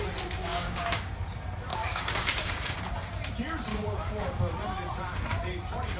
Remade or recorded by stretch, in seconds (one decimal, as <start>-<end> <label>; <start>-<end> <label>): 0.0-0.5 recorded; 0.5-1.1 remade; 1.1-1.7 recorded; 1.7-2.8 remade; 2.8-3.7 recorded; 3.7-4.4 remade; 4.4-6.0 recorded